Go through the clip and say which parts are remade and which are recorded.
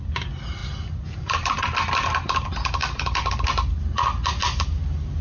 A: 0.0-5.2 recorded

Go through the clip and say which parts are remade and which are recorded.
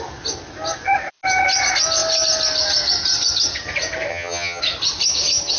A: 0.0-4.1 recorded; 4.1-4.6 remade; 4.6-5.6 recorded